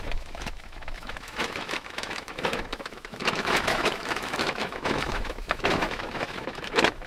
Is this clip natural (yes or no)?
no